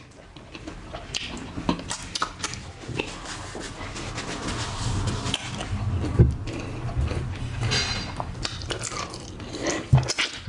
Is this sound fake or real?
real